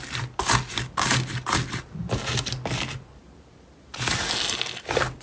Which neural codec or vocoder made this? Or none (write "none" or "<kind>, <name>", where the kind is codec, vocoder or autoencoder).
none